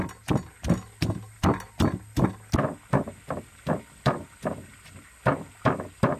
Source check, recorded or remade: recorded